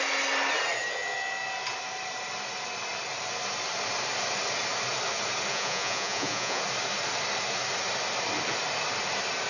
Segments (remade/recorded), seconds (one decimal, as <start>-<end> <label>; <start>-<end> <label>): 0.0-5.5 recorded; 5.5-6.6 remade; 6.6-9.5 recorded